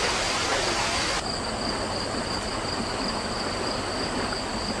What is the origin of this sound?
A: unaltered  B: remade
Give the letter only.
A